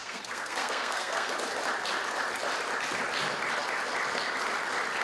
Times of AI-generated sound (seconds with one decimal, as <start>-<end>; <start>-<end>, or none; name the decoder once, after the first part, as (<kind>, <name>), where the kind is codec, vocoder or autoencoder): 0.0-1.3 (codec, SNAC)